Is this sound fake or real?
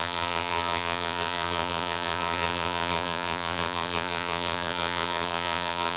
fake